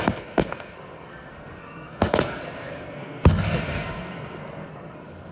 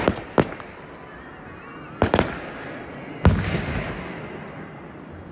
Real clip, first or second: second